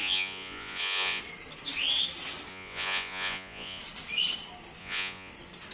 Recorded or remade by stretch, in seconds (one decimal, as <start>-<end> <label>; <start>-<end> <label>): 0.0-1.2 remade; 1.2-2.5 recorded; 2.5-3.8 remade; 3.8-4.8 recorded; 4.8-5.3 remade; 5.3-5.7 recorded